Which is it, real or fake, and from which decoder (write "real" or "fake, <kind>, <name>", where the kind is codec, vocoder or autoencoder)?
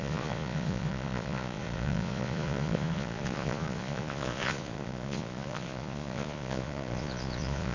fake, vocoder, Vocos